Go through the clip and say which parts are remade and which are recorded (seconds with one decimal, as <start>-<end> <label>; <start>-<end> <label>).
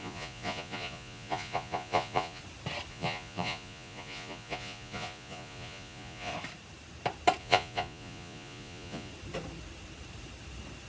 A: 0.0-2.4 remade; 2.4-2.9 recorded; 2.9-6.3 remade; 6.3-7.4 recorded; 7.4-9.1 remade; 9.1-10.9 recorded